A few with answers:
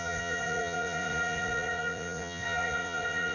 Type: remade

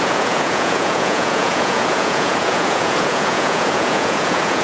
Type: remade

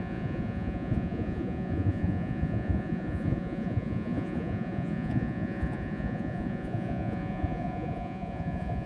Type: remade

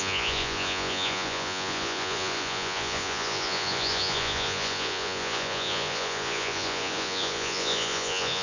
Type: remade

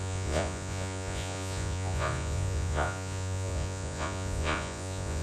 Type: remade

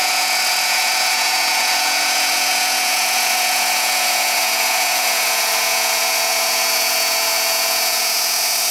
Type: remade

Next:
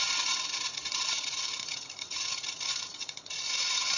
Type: remade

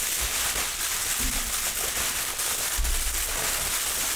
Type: recorded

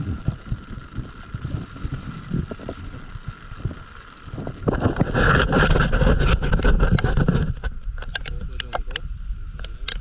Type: recorded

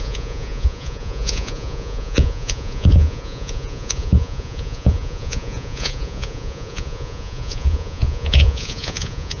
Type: remade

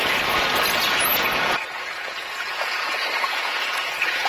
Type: remade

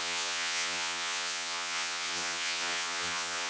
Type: remade